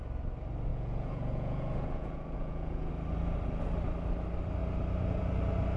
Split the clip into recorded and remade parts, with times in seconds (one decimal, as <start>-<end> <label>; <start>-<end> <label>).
0.0-0.7 recorded; 0.7-2.9 remade; 2.9-5.8 recorded